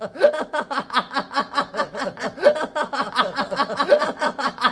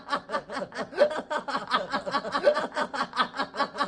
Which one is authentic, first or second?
second